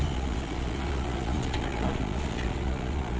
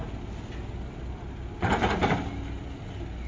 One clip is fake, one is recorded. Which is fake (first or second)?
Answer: first